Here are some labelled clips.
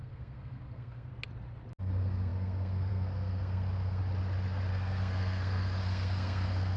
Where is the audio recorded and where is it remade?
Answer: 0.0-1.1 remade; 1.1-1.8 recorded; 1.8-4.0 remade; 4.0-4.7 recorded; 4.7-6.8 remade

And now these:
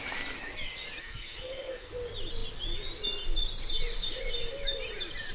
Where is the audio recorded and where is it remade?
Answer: 0.0-1.0 recorded; 1.0-1.9 remade; 1.9-5.3 recorded

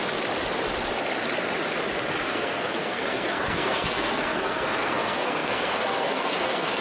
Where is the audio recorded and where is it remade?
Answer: 0.0-2.2 recorded; 2.2-6.8 remade

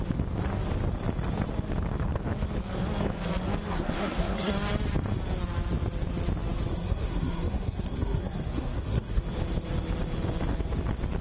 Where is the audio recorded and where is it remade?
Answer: 0.0-3.7 recorded; 3.7-4.5 remade; 4.5-6.7 recorded; 6.7-9.2 remade; 9.2-11.2 recorded

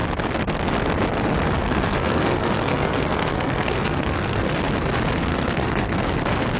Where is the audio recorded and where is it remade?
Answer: 0.0-1.6 recorded; 1.6-4.5 remade; 4.5-5.3 recorded; 5.3-6.0 remade; 6.0-6.6 recorded

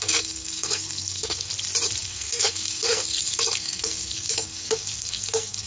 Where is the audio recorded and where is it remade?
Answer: 0.0-1.5 remade; 1.5-2.0 recorded; 2.0-5.7 remade

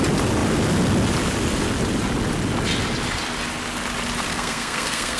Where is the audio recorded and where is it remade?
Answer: 0.0-4.3 recorded; 4.3-5.2 remade